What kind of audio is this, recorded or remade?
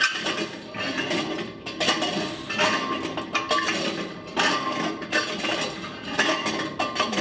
recorded